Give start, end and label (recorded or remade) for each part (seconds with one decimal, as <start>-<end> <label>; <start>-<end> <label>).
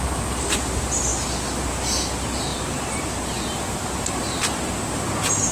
0.0-5.5 recorded